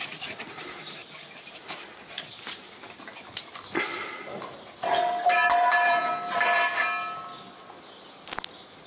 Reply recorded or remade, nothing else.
recorded